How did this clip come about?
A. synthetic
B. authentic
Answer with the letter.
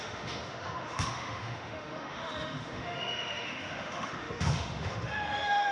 A